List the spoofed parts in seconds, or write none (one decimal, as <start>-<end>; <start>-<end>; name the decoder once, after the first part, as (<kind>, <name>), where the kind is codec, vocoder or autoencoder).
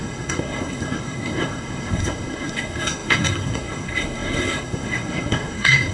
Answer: 0.0-5.9 (codec, SNAC)